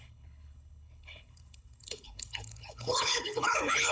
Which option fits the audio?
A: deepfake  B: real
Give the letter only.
A